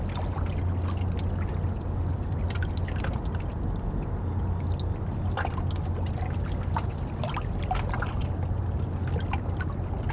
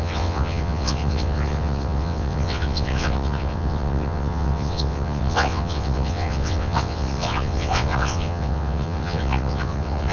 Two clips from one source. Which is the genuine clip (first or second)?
first